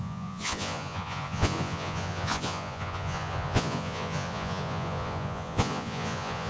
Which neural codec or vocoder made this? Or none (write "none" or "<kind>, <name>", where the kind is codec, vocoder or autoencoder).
vocoder, Vocos